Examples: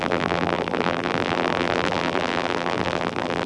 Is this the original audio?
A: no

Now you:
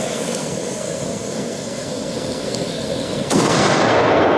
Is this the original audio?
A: no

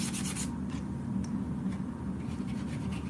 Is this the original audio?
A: yes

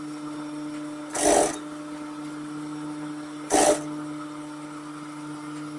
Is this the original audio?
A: yes